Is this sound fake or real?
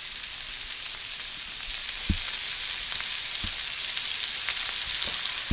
real